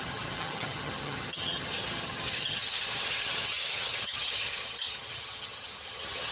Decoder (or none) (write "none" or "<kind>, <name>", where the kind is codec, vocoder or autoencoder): vocoder, HiFi-GAN